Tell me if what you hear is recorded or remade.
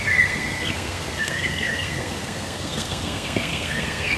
remade